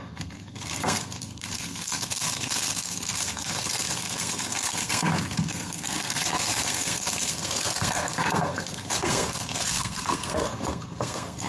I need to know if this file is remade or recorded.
remade